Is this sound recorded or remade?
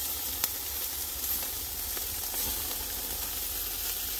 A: recorded